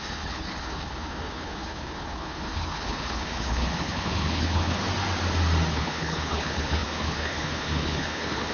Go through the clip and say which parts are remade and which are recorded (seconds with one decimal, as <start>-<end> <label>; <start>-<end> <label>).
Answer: 0.0-4.8 remade; 4.8-5.7 recorded; 5.7-8.5 remade